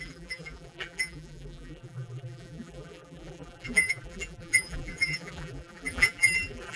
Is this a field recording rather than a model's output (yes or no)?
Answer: no